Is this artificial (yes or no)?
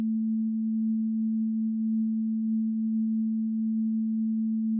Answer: yes